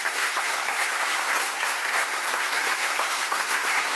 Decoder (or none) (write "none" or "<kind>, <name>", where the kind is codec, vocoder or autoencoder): codec, SNAC